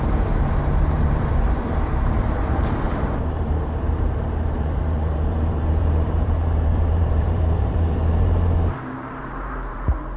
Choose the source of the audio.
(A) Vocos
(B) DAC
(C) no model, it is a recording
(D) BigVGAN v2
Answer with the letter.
D